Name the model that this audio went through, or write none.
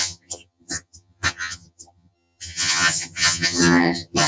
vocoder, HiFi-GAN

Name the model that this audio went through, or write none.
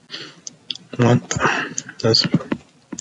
none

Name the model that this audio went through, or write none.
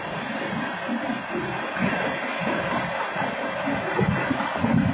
none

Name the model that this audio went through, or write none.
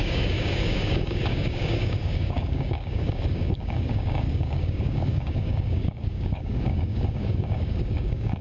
codec, DAC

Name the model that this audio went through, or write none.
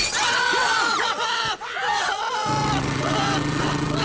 vocoder, WaveNeXt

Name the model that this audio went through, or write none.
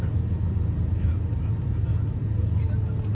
none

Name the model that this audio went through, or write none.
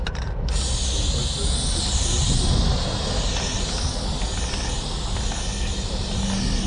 none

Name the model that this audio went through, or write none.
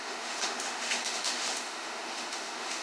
autoencoder, DAC-VAE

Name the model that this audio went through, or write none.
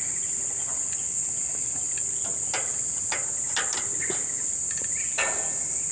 none